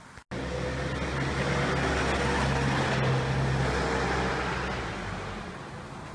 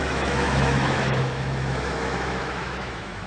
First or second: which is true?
first